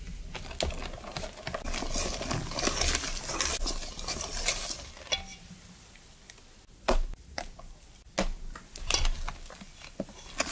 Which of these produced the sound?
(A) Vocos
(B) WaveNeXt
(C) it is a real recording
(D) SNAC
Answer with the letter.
C